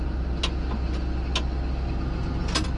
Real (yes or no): yes